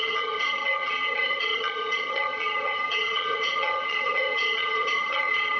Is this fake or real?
fake